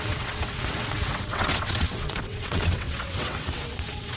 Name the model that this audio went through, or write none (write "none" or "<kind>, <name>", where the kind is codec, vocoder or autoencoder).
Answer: vocoder, WaveNeXt